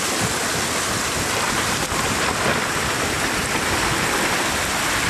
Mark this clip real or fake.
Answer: real